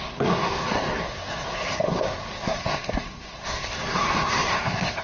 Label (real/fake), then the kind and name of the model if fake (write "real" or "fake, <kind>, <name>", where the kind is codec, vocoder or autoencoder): fake, codec, SNAC